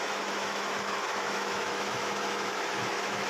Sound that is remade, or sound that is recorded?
remade